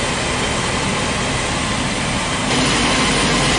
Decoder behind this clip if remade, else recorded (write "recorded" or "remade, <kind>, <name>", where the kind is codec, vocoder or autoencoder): recorded